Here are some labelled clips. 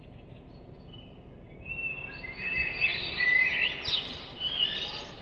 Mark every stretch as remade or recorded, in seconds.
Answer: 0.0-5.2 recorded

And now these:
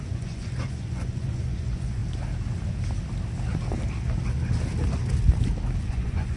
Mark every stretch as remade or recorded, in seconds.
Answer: 0.0-2.0 remade; 2.0-5.8 recorded; 5.8-6.4 remade

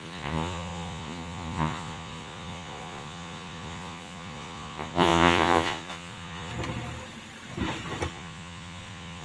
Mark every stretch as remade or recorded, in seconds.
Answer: 0.0-6.5 remade; 6.5-8.1 recorded; 8.1-9.2 remade

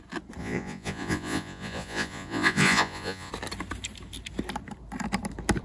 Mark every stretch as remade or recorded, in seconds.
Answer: 0.0-0.4 recorded; 0.4-3.3 remade; 3.3-5.6 recorded

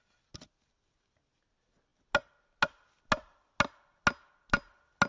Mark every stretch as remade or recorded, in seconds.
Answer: 0.0-5.1 recorded

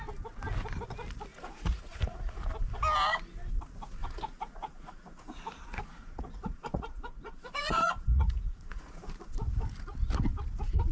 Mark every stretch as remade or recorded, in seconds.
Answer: 0.0-1.3 recorded; 1.3-2.5 remade; 2.5-4.0 recorded; 4.0-9.1 remade; 9.1-10.9 recorded